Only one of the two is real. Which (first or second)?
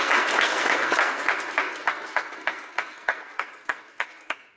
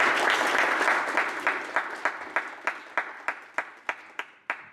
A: second